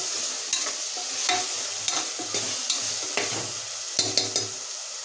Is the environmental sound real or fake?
real